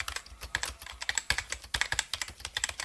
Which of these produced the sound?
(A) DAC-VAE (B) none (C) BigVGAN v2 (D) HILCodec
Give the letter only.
B